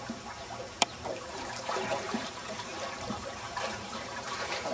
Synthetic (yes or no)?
yes